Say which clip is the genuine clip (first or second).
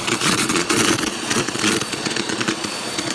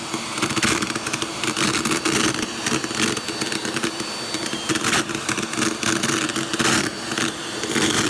second